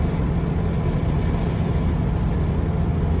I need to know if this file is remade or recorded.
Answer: recorded